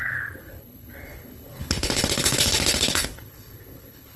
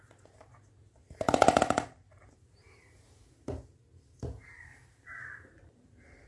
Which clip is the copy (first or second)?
first